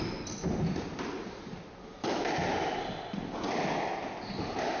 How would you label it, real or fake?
real